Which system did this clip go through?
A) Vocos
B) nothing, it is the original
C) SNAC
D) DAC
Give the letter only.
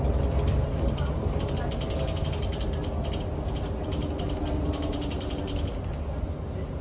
B